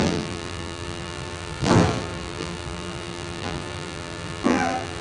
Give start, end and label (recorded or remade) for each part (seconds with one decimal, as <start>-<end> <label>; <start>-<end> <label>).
0.0-5.0 remade